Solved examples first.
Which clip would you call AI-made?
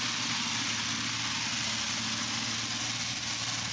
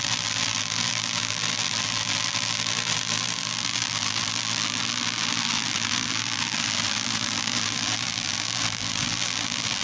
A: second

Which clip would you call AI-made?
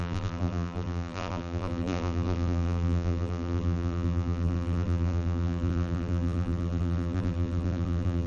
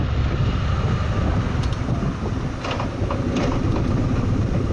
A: first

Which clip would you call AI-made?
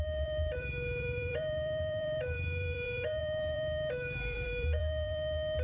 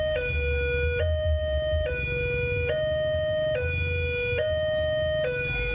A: first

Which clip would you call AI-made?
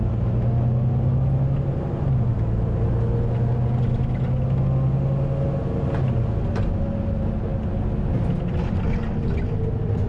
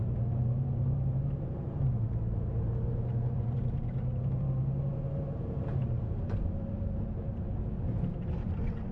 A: second